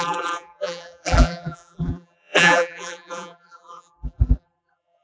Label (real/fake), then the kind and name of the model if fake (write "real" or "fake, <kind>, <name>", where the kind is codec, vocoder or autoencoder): fake, vocoder, BigVGAN v2